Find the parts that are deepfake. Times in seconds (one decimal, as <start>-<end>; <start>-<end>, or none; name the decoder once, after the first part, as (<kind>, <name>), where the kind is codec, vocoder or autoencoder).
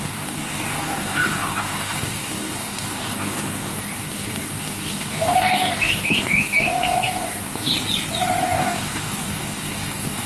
0.0-7.7 (codec, DAC); 8.4-10.3